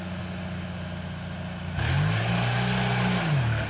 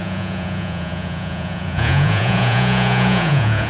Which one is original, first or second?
first